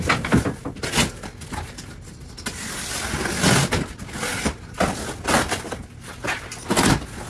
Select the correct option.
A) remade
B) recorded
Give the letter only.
B